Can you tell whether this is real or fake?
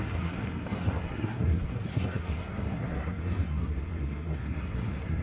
fake